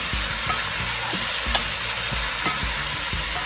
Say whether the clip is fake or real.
real